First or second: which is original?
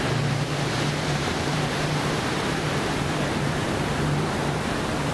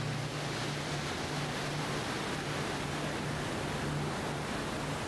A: second